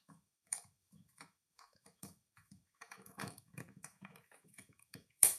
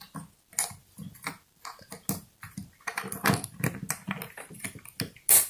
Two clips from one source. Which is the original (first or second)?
second